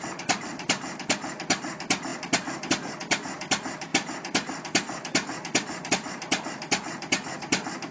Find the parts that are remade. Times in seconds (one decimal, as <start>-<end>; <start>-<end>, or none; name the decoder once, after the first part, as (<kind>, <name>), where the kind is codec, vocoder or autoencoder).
none